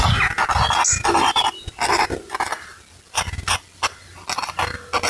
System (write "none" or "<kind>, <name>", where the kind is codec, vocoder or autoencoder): none